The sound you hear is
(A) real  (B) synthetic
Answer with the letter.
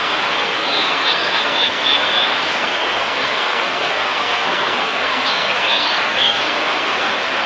B